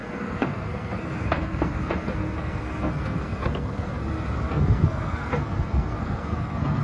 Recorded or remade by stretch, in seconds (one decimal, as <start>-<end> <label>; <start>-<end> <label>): 0.0-4.0 remade; 4.0-4.5 recorded; 4.5-6.8 remade